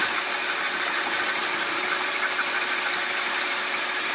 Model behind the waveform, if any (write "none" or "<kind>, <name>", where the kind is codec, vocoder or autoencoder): none